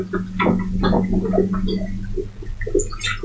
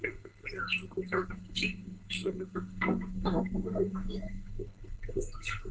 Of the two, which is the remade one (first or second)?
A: second